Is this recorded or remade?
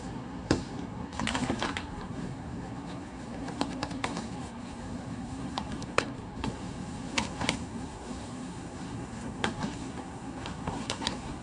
remade